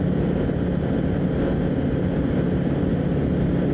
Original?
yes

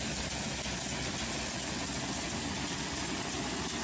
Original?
yes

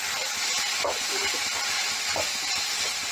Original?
yes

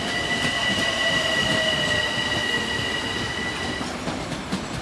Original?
yes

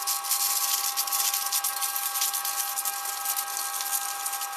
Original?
yes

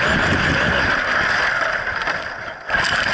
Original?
yes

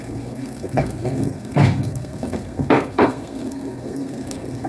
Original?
no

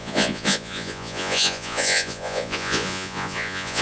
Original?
no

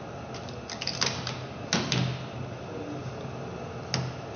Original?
yes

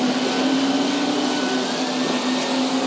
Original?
yes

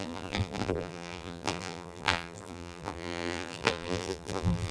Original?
no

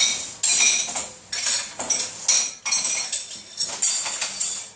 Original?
yes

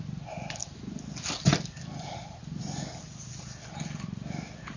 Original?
yes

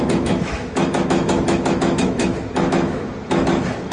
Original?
no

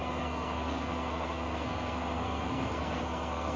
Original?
no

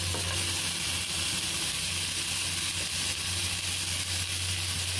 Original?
yes